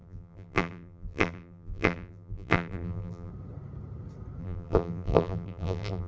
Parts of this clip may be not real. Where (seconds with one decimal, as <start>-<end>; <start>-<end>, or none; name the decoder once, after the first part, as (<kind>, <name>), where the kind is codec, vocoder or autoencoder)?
0.0-3.3 (vocoder, BigVGAN v2); 4.4-6.1